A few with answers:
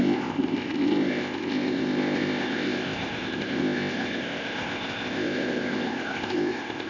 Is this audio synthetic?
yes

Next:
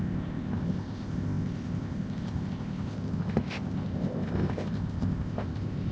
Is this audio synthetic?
yes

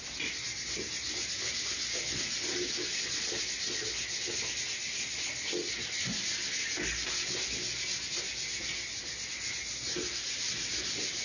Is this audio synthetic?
no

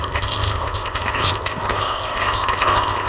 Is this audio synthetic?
yes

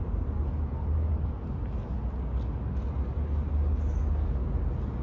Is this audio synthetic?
no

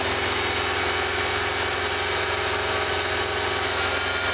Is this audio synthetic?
no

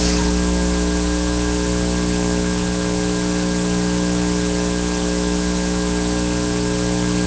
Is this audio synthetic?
no